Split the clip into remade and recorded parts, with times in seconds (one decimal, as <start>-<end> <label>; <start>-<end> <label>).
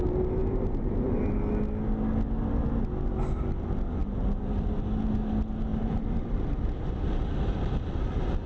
0.0-0.4 recorded; 0.4-1.2 remade; 1.2-4.0 recorded; 4.0-5.1 remade; 5.1-5.7 recorded; 5.7-6.9 remade; 6.9-8.5 recorded